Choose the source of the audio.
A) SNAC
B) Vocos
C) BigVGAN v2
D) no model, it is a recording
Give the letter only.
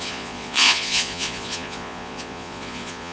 B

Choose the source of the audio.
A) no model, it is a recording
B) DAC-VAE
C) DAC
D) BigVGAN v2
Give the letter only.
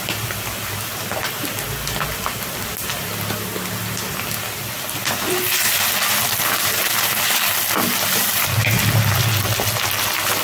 A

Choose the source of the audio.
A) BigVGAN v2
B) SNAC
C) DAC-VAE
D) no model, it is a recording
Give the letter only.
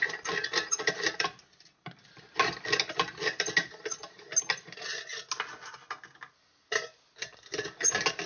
D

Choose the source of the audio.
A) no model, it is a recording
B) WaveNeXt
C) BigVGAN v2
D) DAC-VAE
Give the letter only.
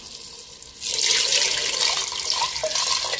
A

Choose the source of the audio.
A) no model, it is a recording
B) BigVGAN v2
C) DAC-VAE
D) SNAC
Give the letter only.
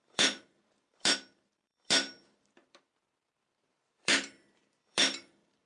B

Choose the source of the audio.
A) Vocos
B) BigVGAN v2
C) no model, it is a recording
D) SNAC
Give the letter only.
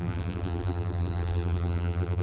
B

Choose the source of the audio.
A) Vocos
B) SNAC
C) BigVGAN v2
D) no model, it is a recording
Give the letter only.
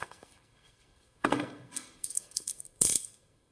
B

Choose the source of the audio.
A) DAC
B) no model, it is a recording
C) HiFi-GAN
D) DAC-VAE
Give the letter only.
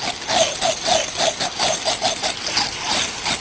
B